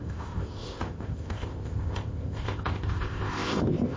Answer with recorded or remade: remade